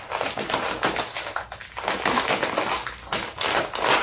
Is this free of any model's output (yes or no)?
yes